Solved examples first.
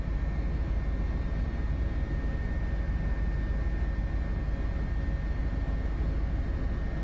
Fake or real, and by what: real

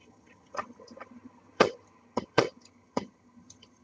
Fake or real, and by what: fake, vocoder, HiFi-GAN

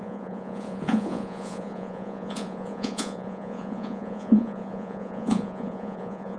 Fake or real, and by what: fake, vocoder, Vocos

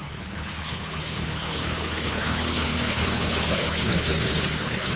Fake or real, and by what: fake, codec, HILCodec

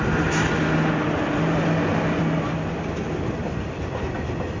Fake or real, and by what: real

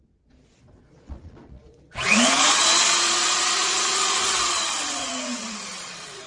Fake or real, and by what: fake, vocoder, Vocos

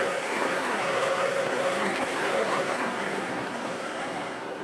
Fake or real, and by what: fake, codec, SNAC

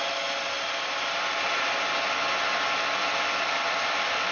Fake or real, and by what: real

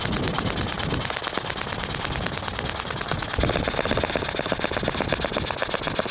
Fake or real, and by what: real